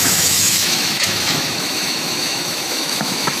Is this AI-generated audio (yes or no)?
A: yes